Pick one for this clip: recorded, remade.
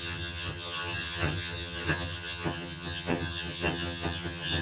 remade